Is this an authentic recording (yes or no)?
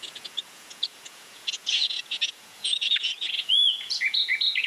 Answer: no